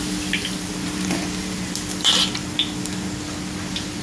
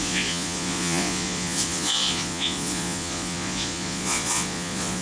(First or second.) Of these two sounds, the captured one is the first